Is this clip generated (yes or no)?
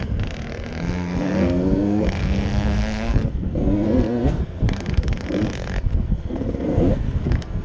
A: yes